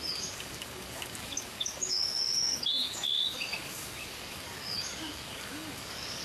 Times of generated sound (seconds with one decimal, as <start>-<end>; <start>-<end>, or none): 0.0-6.2